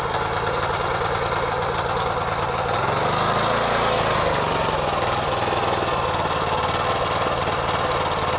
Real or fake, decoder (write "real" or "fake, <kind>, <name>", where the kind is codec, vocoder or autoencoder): real